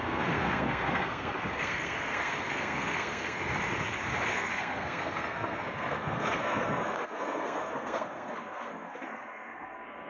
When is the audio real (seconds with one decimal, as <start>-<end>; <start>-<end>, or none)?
3.5-4.3